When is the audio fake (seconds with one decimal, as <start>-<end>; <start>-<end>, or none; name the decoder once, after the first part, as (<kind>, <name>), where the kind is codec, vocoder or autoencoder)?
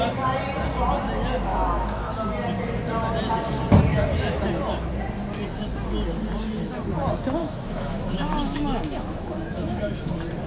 1.5-2.1 (autoencoder, DAC-VAE); 3.9-4.9; 7.4-10.1